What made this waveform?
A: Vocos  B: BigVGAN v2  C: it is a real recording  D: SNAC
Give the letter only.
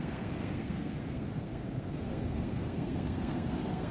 D